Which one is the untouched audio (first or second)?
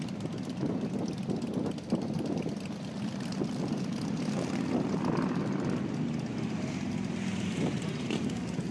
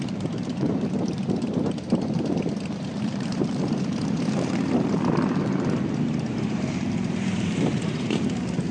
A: first